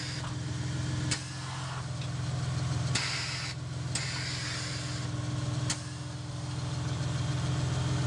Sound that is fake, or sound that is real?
real